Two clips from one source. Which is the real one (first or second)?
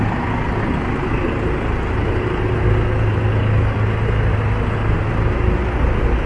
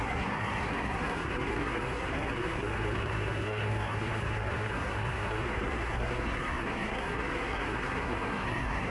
first